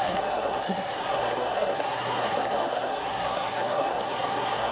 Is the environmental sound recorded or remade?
remade